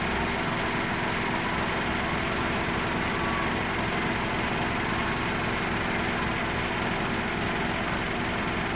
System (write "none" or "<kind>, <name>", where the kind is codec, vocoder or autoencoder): none